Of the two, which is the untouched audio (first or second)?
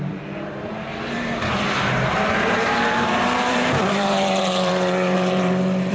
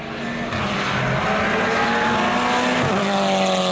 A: second